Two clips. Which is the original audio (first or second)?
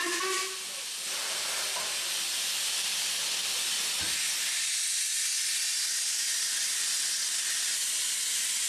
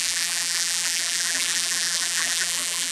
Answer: first